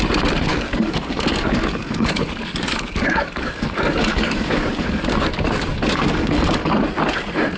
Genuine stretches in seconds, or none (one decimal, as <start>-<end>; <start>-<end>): 0.0-0.5; 5.0-5.7; 6.8-7.6